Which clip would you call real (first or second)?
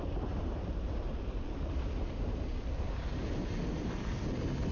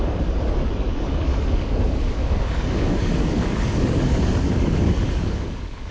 first